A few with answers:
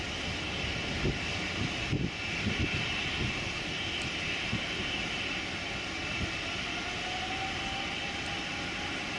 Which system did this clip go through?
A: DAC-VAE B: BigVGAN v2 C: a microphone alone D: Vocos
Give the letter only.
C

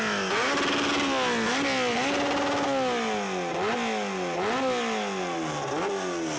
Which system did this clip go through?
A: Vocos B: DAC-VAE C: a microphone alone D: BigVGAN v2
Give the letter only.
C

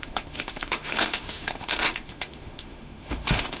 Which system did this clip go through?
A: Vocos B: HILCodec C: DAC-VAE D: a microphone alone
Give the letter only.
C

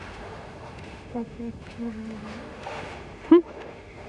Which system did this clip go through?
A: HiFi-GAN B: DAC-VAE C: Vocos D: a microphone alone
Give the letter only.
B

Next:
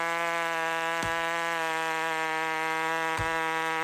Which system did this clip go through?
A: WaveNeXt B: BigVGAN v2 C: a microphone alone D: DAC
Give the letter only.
C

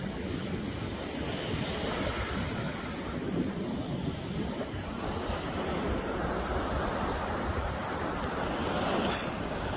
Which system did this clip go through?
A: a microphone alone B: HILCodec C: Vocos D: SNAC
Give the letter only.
A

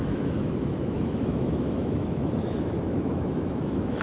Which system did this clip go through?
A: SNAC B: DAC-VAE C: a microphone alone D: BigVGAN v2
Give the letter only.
B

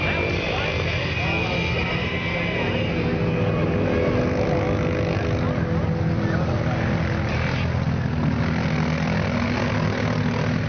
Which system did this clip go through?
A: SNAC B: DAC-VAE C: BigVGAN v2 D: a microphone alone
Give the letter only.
D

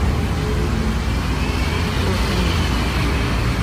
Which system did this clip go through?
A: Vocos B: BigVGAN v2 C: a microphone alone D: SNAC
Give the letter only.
C